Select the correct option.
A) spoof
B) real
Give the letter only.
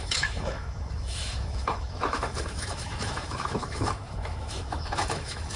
A